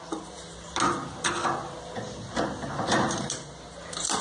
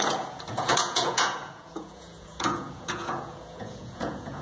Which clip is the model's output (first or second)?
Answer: second